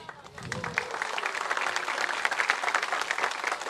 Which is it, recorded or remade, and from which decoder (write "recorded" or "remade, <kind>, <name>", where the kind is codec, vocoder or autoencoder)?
recorded